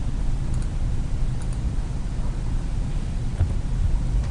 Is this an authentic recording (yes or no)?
no